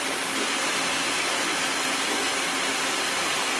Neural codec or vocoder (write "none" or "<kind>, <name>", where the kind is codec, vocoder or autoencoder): none